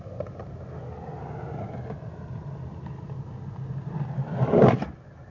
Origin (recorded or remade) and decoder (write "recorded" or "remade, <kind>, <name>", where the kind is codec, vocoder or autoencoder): recorded